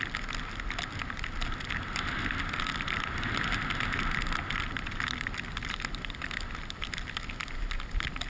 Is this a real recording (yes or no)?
yes